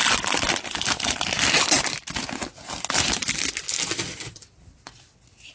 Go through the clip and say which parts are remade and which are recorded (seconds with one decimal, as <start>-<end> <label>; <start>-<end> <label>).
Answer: 0.0-5.5 recorded